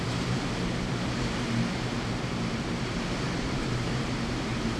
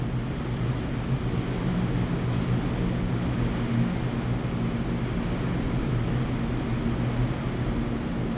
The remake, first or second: first